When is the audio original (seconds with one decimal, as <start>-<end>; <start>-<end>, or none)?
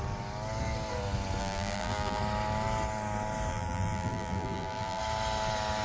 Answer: 0.0-1.4; 2.2-3.5; 5.0-5.8